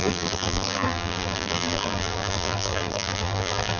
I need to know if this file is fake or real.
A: fake